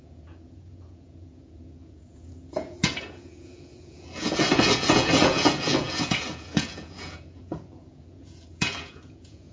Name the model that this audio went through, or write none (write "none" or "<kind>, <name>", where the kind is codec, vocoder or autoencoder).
vocoder, Vocos